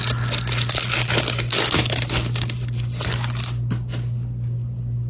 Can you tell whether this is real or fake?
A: real